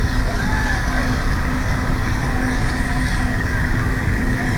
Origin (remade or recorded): remade